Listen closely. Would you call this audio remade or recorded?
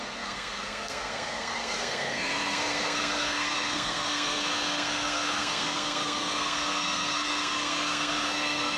remade